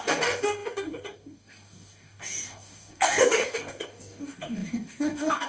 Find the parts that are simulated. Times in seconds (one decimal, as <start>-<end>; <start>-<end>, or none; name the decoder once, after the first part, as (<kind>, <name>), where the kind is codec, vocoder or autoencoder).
0.0-5.5 (codec, DAC)